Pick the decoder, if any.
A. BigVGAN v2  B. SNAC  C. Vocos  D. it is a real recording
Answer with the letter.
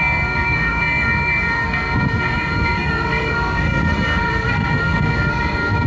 B